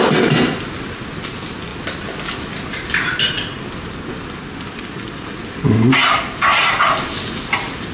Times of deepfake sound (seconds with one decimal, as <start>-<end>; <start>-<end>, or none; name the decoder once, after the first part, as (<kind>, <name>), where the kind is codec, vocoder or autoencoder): none